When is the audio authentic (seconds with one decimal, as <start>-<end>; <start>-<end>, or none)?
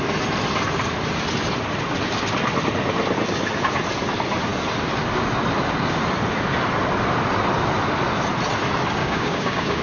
0.0-9.0